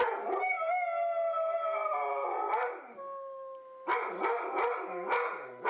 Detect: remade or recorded recorded